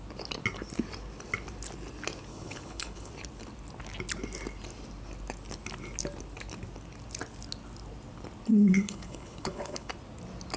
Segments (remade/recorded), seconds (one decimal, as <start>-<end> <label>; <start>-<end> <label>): 0.0-2.3 recorded; 2.3-3.1 remade; 3.1-8.5 recorded; 8.5-9.9 remade; 9.9-10.6 recorded